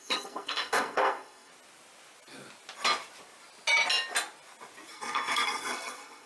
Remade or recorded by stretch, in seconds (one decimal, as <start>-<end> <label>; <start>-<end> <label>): 0.0-1.5 remade; 1.5-4.9 recorded; 4.9-6.3 remade